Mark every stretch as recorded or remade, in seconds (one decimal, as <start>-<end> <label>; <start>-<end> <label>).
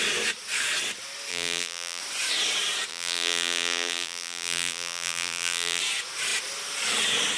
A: 0.0-1.3 recorded; 1.3-2.0 remade; 2.0-2.9 recorded; 2.9-5.8 remade; 5.8-7.4 recorded